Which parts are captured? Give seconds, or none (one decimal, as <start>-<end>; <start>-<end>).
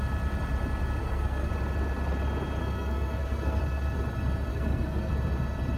0.0-1.0; 1.5-2.6; 3.6-4.5; 5.1-5.8